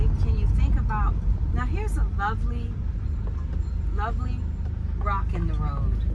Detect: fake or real real